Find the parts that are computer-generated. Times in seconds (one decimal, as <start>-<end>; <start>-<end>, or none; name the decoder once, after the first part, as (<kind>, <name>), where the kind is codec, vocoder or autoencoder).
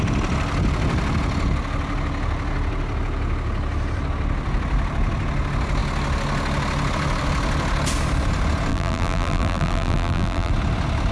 8.7-10.5 (vocoder, BigVGAN v2)